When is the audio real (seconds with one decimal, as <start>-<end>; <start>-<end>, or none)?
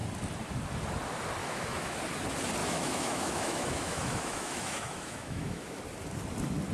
0.0-1.4; 2.0-2.6; 5.8-6.7